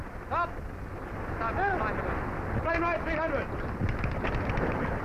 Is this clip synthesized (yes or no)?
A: no